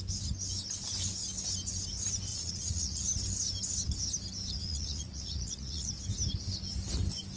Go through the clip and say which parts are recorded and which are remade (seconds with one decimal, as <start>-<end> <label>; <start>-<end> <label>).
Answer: 0.0-2.3 recorded; 2.3-3.0 remade; 3.0-4.6 recorded; 4.6-5.9 remade; 5.9-7.4 recorded